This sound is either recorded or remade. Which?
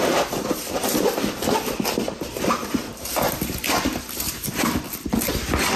remade